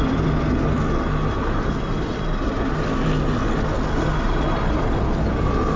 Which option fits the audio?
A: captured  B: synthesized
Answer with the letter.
A